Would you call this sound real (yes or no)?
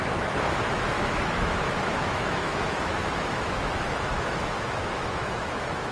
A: no